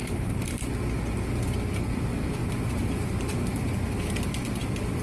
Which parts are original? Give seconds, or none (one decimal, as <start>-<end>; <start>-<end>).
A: 0.7-2.4; 3.3-5.0